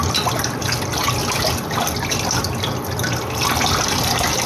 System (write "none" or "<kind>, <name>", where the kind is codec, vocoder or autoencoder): none